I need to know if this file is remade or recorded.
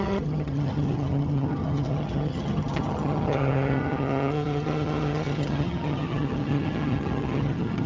remade